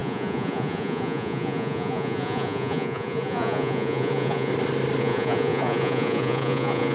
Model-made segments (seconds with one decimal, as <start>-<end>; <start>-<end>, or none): 0.0-4.5; 5.0-6.9